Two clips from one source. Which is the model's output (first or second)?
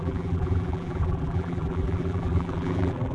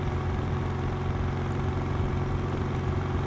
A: first